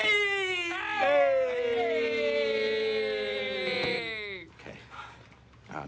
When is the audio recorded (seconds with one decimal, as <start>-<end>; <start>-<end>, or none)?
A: 0.0-3.9; 4.5-5.9